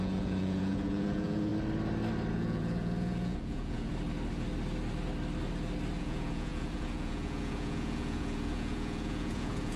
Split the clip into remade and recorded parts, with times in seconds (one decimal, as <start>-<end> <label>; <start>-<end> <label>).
0.0-1.5 remade; 1.5-2.3 recorded; 2.3-3.9 remade; 3.9-6.0 recorded; 6.0-9.8 remade